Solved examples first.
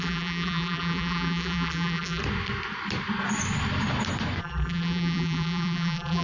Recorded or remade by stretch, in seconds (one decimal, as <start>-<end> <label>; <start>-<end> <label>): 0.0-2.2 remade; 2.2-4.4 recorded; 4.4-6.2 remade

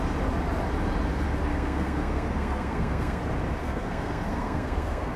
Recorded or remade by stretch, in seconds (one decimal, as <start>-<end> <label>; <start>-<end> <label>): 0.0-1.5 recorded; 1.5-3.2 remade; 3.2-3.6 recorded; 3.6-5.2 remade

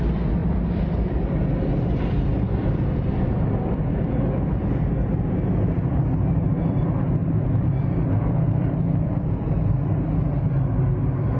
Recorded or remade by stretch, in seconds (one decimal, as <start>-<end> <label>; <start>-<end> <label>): 0.0-0.4 recorded; 0.4-4.2 remade; 4.2-6.2 recorded; 6.2-6.8 remade; 6.8-7.2 recorded; 7.2-9.9 remade; 9.9-11.4 recorded

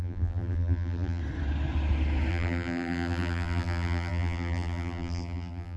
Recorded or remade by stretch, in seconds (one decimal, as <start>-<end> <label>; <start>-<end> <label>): 0.0-1.2 remade; 1.2-2.3 recorded; 2.3-5.8 remade

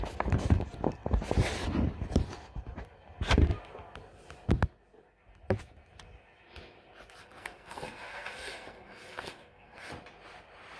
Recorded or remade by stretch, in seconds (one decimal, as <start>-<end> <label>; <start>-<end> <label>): 0.0-7.2 recorded; 7.2-9.9 remade; 9.9-10.8 recorded